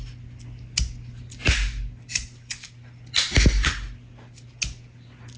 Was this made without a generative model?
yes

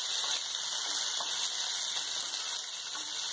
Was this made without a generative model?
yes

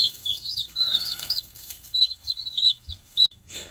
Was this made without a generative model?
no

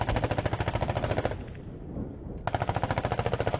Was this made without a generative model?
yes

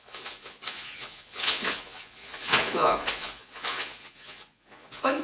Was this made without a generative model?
no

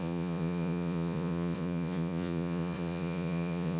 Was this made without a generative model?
no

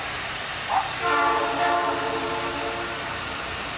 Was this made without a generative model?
yes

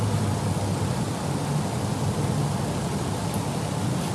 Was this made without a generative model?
yes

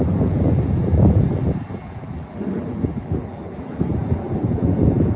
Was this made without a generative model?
no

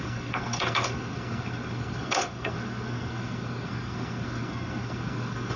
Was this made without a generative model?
no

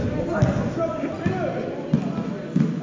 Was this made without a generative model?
yes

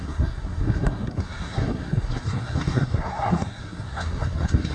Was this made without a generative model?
no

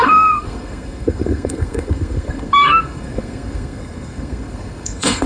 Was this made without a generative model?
no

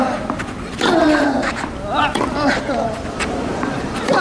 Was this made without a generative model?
no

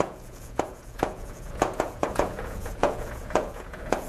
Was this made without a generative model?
no